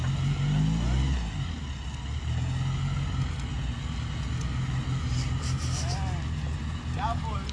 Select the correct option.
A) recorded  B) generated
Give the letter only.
A